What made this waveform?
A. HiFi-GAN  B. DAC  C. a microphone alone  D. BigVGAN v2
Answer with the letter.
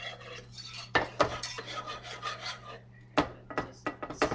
C